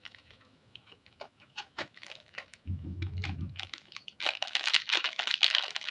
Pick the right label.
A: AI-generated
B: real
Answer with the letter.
A